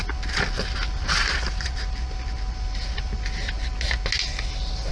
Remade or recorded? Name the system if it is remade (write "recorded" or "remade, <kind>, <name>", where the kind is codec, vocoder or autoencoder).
recorded